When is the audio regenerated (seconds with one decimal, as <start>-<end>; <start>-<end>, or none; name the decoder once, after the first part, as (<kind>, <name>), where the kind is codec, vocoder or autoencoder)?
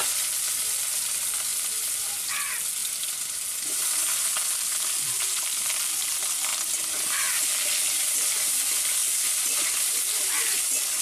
1.5-2.1 (vocoder, BigVGAN v2); 9.0-10.0